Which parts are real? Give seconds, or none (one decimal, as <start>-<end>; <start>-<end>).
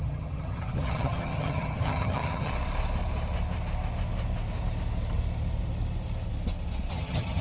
2.5-6.9